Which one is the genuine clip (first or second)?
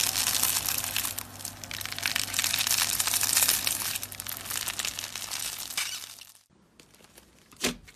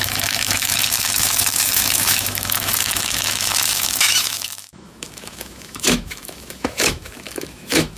first